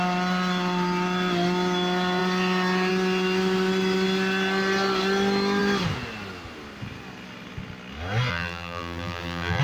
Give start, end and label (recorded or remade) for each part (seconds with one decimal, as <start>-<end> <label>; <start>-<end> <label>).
0.0-8.3 recorded; 8.3-9.6 remade